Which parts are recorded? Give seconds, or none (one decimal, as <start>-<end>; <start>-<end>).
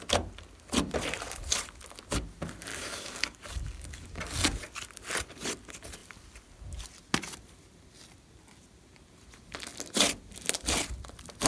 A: 0.0-2.7; 4.2-11.5